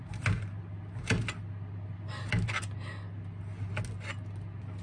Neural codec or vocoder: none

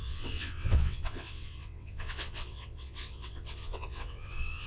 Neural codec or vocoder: vocoder, WaveNeXt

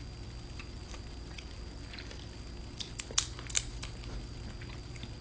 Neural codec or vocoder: none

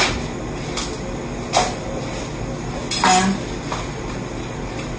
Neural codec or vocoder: none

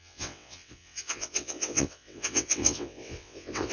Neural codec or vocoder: vocoder, WaveNeXt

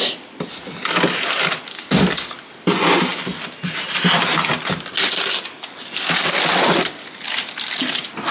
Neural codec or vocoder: none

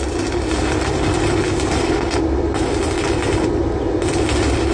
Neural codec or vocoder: none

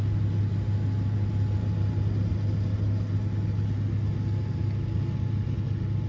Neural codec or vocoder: none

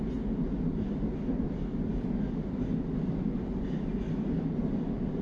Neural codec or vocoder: none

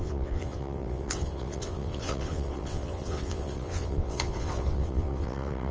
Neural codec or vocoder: vocoder, WaveNeXt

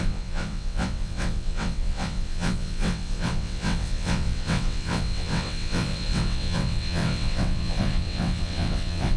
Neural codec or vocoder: vocoder, WaveNeXt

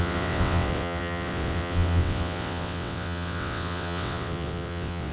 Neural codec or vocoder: vocoder, WaveNeXt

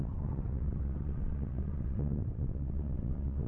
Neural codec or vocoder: vocoder, WaveNeXt